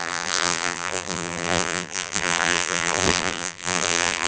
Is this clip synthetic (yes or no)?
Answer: yes